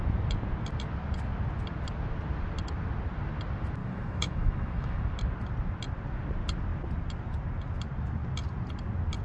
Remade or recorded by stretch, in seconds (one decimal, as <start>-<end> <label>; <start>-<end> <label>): 0.0-3.8 recorded; 3.8-5.0 remade; 5.0-9.2 recorded